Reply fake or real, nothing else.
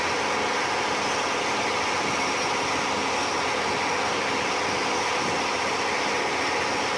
real